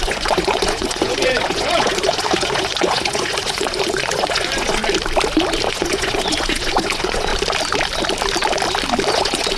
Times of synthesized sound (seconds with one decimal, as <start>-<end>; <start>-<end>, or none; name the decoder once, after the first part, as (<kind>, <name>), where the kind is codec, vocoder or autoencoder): 0.0-4.8 (vocoder, Vocos); 5.7-7.3; 9.1-9.6